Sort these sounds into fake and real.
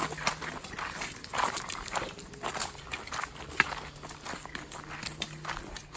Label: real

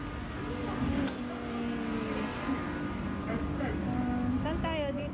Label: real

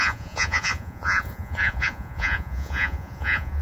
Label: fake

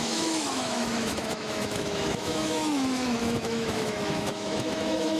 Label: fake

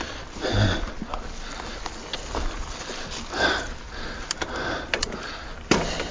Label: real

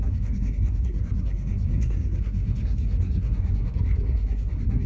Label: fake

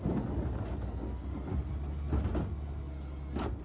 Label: real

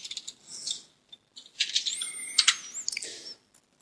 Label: real